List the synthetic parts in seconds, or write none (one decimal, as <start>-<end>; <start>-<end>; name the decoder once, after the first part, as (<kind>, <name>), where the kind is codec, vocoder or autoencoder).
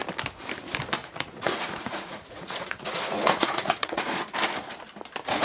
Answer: 1.0-4.2 (vocoder, Vocos)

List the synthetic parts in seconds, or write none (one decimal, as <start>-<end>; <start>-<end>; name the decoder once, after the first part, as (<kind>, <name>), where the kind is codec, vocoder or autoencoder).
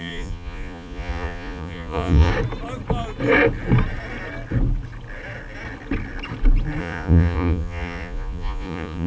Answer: 0.0-2.3 (vocoder, Vocos); 6.8-9.1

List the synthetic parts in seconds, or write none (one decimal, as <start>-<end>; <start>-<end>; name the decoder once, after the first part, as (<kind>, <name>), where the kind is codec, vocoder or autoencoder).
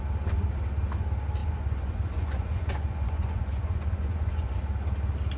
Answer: 1.4-4.6 (vocoder, Vocos)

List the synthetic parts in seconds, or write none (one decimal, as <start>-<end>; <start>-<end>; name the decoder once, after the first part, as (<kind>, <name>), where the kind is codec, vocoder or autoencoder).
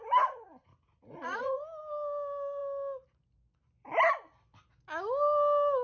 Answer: 0.6-1.6 (vocoder, Vocos)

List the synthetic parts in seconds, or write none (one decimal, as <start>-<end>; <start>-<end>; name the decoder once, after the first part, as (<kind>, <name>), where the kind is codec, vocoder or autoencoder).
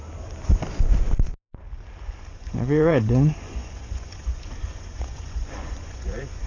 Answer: 2.3-6.5 (vocoder, Vocos)